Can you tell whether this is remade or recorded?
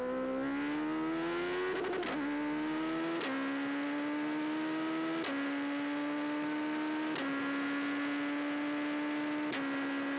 recorded